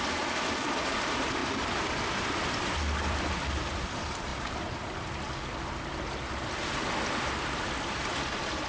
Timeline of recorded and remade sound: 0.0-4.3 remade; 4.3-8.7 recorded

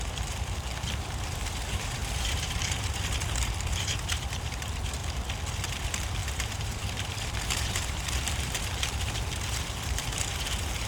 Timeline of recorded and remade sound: 0.0-5.0 remade; 5.0-5.7 recorded; 5.7-10.9 remade

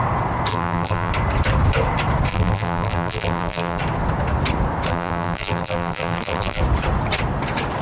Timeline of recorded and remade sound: 0.0-0.5 recorded; 0.5-1.1 remade; 1.1-2.3 recorded; 2.3-3.8 remade; 3.8-4.9 recorded; 4.9-6.6 remade; 6.6-7.8 recorded